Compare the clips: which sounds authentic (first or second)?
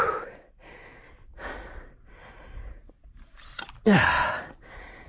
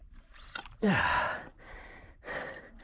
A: first